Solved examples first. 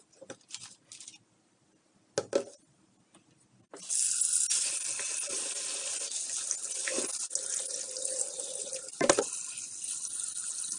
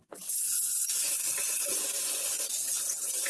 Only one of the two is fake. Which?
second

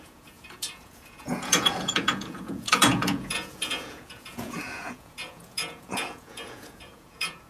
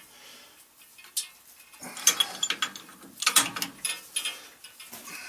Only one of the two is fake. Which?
first